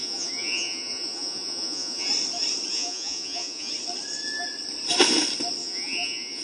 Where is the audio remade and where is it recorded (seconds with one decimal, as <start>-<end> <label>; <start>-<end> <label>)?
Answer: 0.0-2.1 remade; 2.1-2.7 recorded; 2.7-3.7 remade; 3.7-5.6 recorded; 5.6-6.4 remade